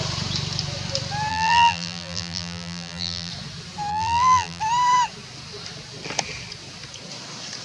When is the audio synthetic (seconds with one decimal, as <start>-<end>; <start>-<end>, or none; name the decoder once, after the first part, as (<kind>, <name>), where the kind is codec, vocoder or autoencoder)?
1.3-3.3 (vocoder, BigVGAN v2); 3.9-4.6